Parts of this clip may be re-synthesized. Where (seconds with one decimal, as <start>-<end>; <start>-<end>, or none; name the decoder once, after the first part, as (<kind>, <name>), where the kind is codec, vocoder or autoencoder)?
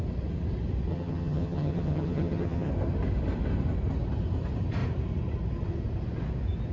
0.9-2.7 (vocoder, HiFi-GAN)